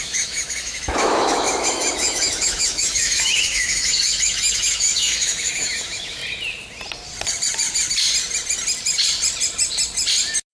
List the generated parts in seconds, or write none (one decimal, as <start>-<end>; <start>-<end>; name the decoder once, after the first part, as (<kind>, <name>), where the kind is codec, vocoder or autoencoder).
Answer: 0.0-6.2 (autoencoder, DAC-VAE)